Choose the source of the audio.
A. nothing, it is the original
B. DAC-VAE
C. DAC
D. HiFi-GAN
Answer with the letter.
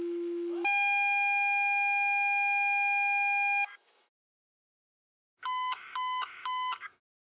B